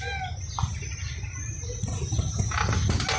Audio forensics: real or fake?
real